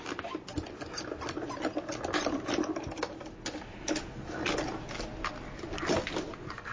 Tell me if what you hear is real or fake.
real